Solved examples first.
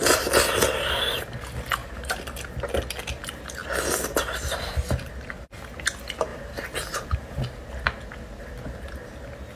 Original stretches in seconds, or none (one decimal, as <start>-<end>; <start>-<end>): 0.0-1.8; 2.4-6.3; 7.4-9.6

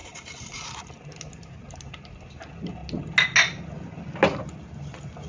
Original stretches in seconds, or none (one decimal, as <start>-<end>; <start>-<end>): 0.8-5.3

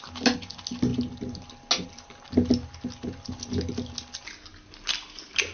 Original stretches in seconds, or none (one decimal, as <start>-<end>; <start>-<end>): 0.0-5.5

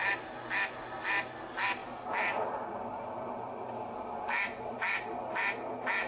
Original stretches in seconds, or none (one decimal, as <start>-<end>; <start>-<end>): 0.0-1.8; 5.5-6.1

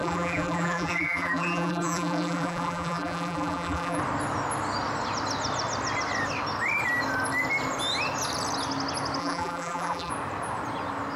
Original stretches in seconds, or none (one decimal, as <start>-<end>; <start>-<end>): 4.0-9.2; 10.1-11.2

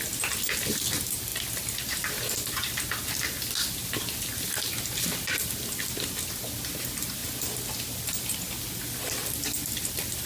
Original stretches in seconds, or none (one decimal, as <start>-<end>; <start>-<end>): 0.0-10.3

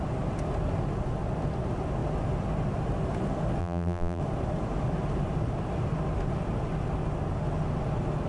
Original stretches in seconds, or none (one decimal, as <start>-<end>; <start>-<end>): 0.0-3.6; 4.2-8.3

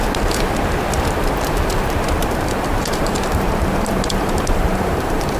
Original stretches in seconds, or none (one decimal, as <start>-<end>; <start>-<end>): 0.0-2.2